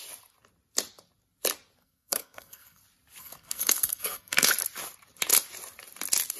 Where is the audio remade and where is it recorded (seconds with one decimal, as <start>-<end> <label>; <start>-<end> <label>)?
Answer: 0.0-1.8 recorded; 1.8-2.8 remade; 2.8-3.2 recorded; 3.2-4.5 remade; 4.5-6.4 recorded